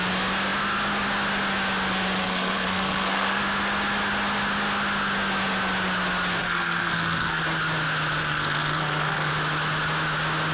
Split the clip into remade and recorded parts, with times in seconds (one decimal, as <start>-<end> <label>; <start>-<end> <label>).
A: 0.0-2.2 recorded; 2.2-3.4 remade; 3.4-6.4 recorded; 6.4-7.4 remade; 7.4-8.2 recorded; 8.2-9.3 remade; 9.3-10.5 recorded